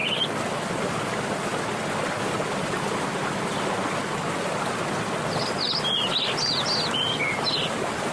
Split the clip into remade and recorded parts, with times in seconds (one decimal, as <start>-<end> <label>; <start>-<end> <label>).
0.0-8.1 recorded